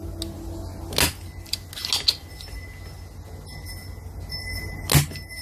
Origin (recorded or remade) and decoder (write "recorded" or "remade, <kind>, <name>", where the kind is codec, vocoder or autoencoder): recorded